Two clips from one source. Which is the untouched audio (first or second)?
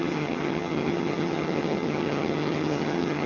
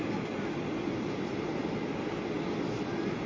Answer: second